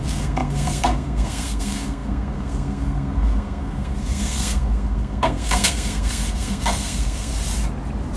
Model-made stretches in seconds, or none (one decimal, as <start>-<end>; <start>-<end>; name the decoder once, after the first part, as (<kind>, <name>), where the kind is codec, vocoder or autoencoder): 0.0-7.3 (codec, SNAC)